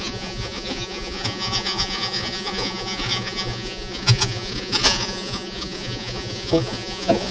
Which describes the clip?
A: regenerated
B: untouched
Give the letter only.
A